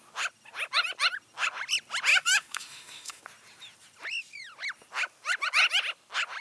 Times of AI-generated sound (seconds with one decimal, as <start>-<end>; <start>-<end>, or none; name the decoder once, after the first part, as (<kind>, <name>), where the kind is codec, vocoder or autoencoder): 2.1-3.2 (autoencoder, DAC-VAE)